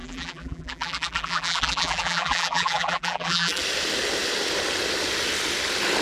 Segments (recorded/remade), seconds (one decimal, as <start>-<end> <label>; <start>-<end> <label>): 0.0-3.6 remade; 3.6-6.0 recorded